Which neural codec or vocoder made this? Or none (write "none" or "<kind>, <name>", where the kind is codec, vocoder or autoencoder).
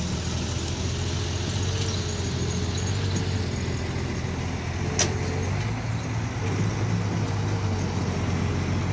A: none